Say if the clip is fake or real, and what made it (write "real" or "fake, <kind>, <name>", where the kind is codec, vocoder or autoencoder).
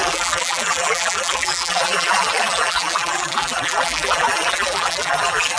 fake, vocoder, BigVGAN v2